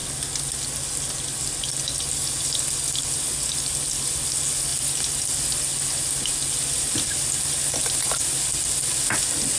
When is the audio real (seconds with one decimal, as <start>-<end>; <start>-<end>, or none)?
0.0-7.8; 8.4-9.6